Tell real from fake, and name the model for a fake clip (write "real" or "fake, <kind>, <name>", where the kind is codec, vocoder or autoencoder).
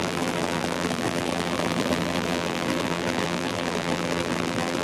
fake, vocoder, BigVGAN v2